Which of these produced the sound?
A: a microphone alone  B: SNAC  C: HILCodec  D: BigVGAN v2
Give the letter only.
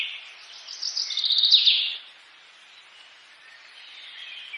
A